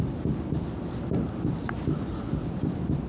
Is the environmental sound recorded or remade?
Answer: remade